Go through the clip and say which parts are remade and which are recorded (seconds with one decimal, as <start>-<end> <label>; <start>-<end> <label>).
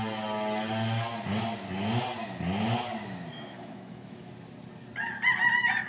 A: 0.0-3.3 recorded; 3.3-4.3 remade; 4.3-5.9 recorded